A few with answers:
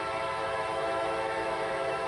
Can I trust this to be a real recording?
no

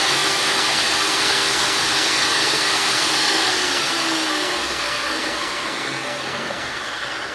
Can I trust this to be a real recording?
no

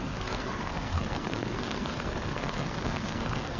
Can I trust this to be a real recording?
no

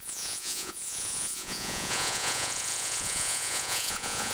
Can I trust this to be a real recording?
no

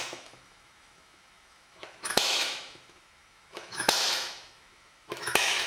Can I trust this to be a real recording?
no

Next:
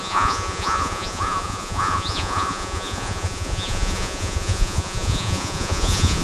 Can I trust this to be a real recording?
no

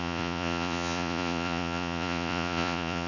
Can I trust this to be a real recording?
no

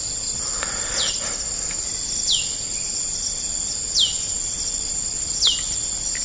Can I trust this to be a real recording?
yes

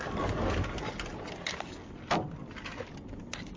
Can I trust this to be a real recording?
yes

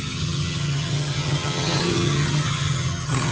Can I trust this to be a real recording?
no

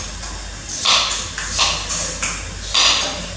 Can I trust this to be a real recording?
yes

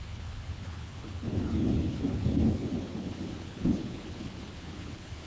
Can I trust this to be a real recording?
no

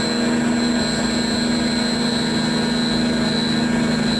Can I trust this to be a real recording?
yes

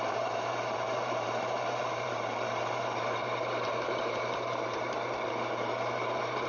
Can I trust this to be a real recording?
no